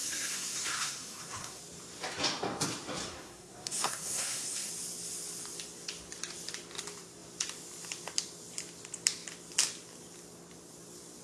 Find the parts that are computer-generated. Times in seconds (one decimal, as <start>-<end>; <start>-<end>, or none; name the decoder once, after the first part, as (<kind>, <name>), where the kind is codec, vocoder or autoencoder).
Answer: 0.0-1.6 (codec, SNAC); 3.0-4.7